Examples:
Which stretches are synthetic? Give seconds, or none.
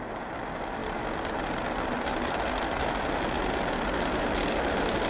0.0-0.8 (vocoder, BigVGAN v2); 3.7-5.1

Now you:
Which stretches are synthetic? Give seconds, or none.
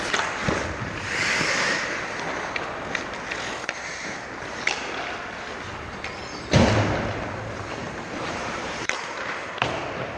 7.8-9.5 (vocoder, BigVGAN v2)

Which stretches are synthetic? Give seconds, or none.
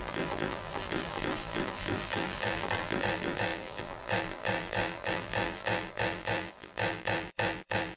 0.0-8.0 (vocoder, BigVGAN v2)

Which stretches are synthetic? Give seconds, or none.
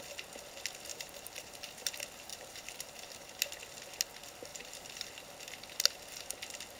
0.9-1.9 (vocoder, BigVGAN v2); 2.3-3.4; 4.5-5.1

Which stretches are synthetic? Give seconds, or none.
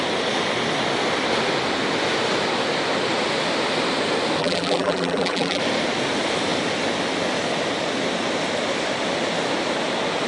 4.4-5.6 (vocoder, BigVGAN v2)